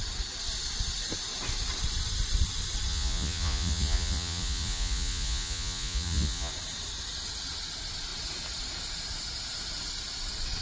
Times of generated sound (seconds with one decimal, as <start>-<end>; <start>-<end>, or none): 2.9-6.5